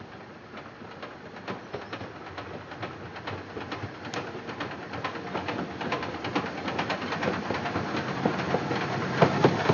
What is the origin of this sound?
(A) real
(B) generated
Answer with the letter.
A